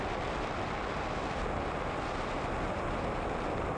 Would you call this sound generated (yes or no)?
no